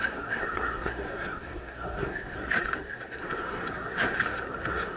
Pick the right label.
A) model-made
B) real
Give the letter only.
A